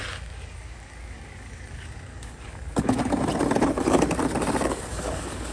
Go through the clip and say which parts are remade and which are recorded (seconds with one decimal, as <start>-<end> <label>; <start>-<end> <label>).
0.0-3.0 remade; 3.0-4.9 recorded; 4.9-5.5 remade